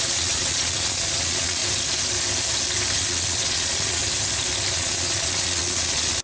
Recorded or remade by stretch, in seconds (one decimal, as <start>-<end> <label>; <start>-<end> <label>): 0.0-1.6 remade; 1.6-3.0 recorded; 3.0-4.0 remade; 4.0-4.7 recorded; 4.7-6.2 remade